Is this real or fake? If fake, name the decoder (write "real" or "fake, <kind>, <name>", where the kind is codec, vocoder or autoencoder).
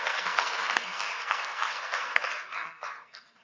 fake, codec, SNAC